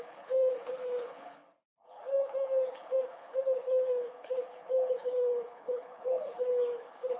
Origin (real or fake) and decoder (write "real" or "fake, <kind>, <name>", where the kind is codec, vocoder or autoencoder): fake, codec, HILCodec